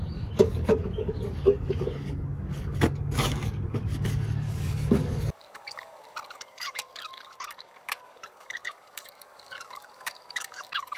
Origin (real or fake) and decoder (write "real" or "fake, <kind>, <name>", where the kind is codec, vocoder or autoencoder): fake, codec, DAC